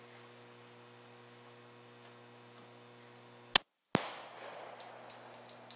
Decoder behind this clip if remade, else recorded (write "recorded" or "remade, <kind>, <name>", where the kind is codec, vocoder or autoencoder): recorded